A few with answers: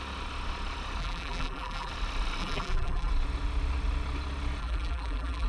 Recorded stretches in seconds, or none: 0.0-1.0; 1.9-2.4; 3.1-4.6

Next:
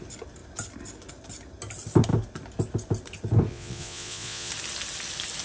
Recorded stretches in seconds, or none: 0.0-3.5; 4.5-5.4

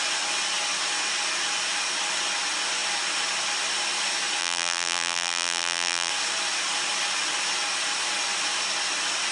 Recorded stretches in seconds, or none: 0.0-4.4; 6.1-9.3

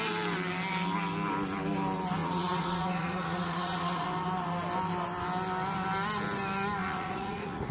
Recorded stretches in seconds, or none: 0.0-2.2; 4.0-6.8

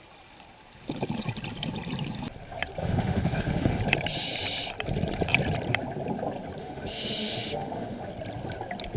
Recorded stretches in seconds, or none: 0.0-2.8; 3.8-6.6; 8.1-9.0